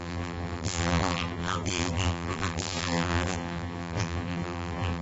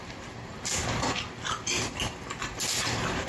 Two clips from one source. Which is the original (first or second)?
second